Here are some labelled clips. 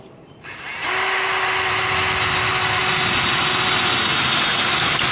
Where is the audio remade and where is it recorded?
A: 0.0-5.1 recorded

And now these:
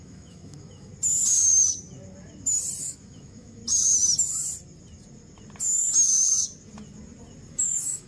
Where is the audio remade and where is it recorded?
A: 0.0-0.9 remade; 0.9-2.8 recorded; 2.8-3.6 remade; 3.6-7.5 recorded; 7.5-8.1 remade

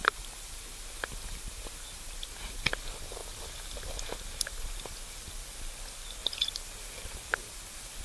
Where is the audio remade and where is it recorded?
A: 0.0-2.7 remade; 2.7-6.2 recorded; 6.2-8.0 remade

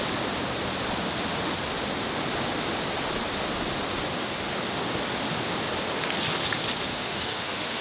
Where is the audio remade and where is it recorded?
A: 0.0-6.9 recorded; 6.9-7.8 remade